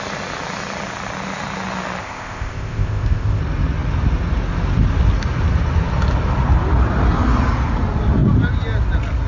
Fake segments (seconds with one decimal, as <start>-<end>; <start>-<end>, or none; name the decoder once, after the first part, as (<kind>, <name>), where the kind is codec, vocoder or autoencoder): 2.0-3.4 (codec, ZipCodec)